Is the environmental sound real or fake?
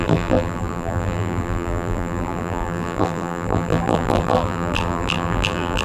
fake